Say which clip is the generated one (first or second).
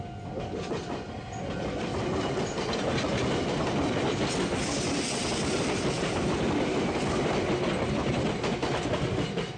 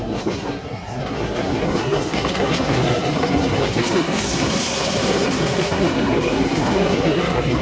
second